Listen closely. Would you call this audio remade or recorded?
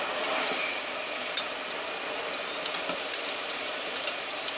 remade